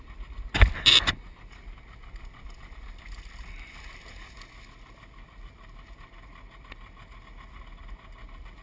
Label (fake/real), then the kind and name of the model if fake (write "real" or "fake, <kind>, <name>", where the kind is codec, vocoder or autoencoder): real